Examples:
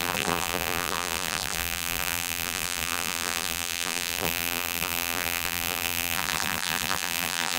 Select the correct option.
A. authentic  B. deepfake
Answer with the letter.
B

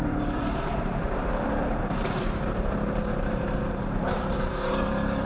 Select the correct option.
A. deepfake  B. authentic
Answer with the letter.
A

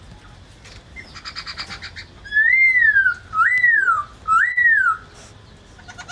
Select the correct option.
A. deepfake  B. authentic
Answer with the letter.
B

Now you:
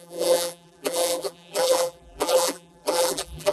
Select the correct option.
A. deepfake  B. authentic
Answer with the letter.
A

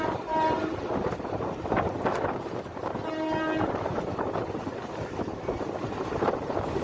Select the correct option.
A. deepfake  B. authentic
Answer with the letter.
A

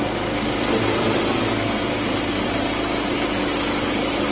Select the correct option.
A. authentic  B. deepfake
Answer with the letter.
A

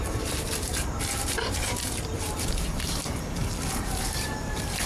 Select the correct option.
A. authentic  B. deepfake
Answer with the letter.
B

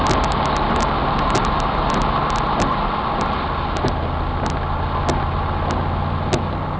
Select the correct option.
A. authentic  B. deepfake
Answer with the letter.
A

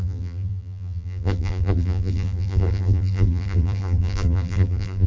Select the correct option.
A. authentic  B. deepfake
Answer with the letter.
B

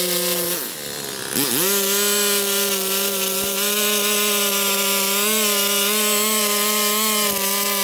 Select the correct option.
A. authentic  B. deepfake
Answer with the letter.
A